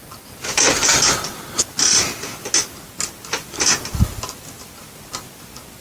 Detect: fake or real real